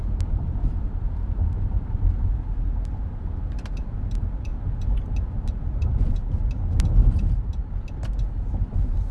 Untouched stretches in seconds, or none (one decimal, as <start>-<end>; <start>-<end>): 4.5-5.4; 7.6-8.5